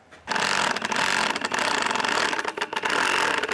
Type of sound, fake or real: real